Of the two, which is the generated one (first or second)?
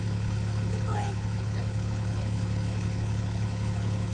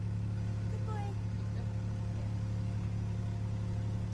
first